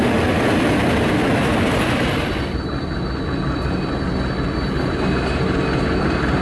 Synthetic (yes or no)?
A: no